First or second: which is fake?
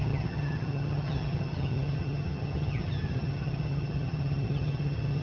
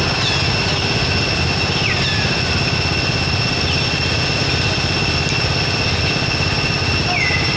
first